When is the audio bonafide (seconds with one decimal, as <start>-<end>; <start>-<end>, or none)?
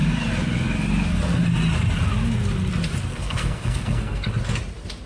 0.0-3.1; 4.3-5.1